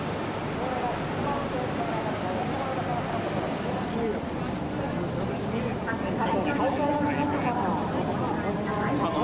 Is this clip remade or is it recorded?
recorded